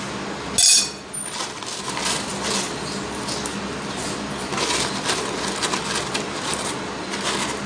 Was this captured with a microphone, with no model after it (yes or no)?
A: yes